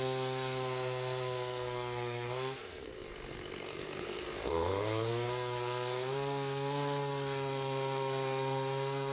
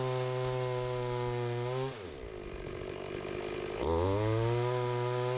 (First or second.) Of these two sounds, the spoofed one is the first